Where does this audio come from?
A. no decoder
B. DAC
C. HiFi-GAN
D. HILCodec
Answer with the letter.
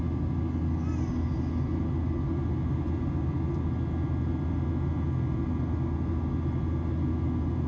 A